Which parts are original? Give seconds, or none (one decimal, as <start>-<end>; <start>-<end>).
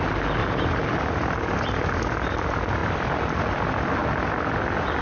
0.0-0.4; 2.2-2.8; 3.4-4.0; 4.6-5.0